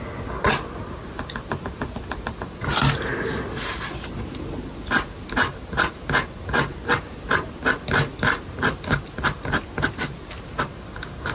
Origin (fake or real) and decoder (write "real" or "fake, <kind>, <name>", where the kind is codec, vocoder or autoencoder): real